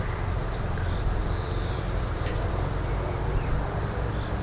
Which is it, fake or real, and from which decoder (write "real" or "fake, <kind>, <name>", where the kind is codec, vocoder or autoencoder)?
fake, vocoder, BigVGAN v2